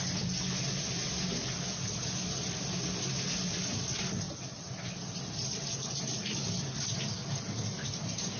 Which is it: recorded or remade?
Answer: recorded